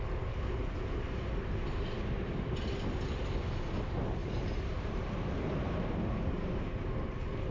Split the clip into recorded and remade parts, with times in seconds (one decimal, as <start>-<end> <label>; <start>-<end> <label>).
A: 0.0-4.2 recorded; 4.2-6.5 remade; 6.5-7.5 recorded